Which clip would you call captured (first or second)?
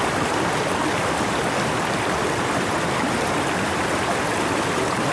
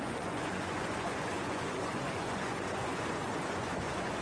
first